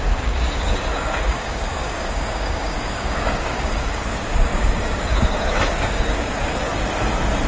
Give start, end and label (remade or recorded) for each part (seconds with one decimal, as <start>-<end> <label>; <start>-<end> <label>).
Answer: 0.0-6.7 remade; 6.7-7.5 recorded